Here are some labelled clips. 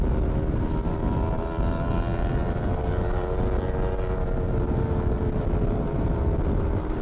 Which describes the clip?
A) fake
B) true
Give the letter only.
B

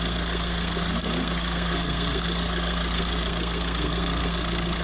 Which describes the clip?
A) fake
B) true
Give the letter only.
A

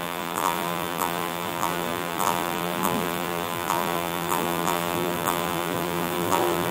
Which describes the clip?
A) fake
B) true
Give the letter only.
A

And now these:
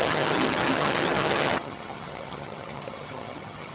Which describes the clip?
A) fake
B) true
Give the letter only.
A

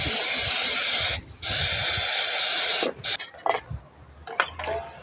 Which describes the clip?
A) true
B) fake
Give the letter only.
A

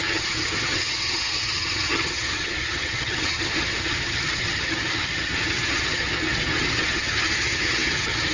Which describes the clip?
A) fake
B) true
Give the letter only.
A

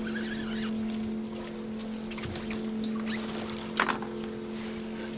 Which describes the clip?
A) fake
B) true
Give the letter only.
B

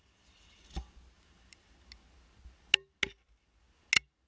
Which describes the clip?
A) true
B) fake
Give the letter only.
A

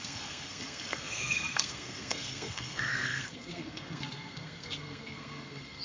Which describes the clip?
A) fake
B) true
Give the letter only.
A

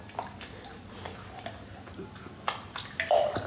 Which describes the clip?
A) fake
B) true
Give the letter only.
B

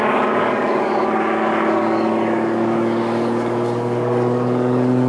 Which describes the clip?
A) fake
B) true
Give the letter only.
A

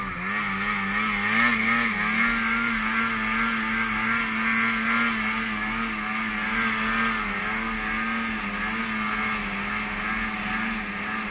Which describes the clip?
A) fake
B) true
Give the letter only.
B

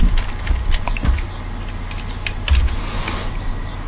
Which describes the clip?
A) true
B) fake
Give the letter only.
A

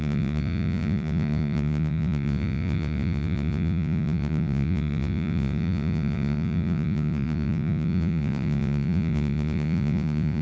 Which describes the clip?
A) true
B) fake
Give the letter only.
B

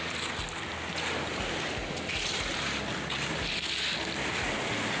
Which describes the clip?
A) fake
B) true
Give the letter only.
B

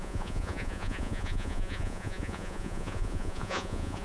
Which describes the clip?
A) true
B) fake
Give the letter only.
B